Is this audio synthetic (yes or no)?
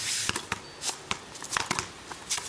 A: no